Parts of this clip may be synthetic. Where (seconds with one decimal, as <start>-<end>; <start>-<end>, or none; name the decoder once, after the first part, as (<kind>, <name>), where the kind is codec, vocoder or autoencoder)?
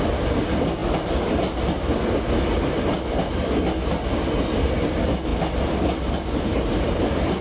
none